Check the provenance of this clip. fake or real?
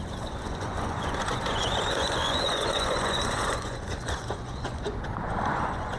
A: fake